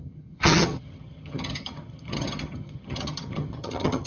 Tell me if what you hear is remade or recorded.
remade